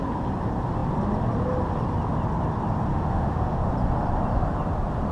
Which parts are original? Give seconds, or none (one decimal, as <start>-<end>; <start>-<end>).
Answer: 0.0-2.9; 3.7-5.1